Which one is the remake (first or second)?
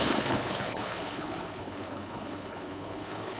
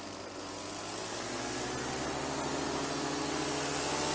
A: first